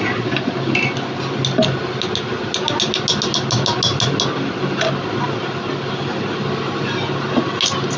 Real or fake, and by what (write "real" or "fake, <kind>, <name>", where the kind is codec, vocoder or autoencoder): real